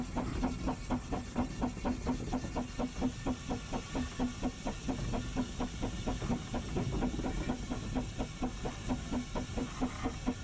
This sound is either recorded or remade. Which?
recorded